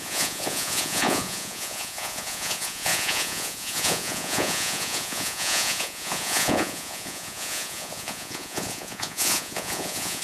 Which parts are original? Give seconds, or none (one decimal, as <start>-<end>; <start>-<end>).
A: none